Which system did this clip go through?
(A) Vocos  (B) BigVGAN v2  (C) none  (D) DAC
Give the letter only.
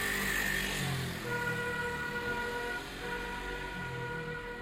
C